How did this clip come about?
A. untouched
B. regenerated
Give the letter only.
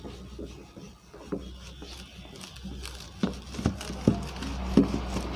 A